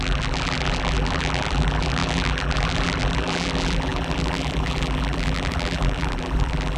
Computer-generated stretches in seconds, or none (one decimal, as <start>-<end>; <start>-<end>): 0.0-6.8